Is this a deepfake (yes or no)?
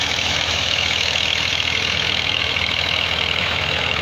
yes